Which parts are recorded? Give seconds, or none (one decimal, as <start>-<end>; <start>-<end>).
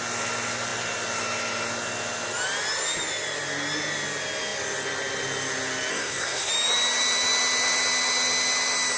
0.0-5.9; 6.5-9.0